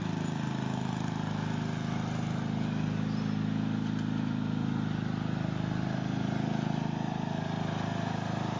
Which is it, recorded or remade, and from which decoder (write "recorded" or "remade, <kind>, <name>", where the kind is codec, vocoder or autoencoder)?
recorded